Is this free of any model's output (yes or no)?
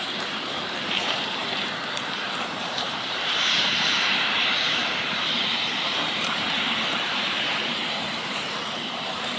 no